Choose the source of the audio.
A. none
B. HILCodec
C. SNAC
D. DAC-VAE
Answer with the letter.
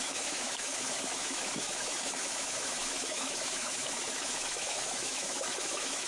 D